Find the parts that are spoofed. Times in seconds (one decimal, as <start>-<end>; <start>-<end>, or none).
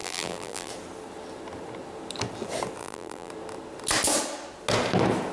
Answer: 0.0-0.7; 2.8-3.3